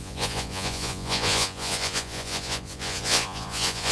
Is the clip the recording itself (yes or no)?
no